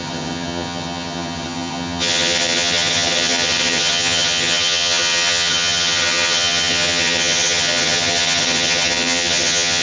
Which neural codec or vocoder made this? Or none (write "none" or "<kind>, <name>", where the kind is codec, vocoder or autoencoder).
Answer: vocoder, HiFi-GAN